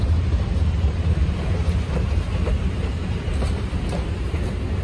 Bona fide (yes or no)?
no